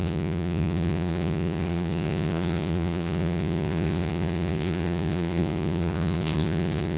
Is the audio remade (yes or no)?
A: yes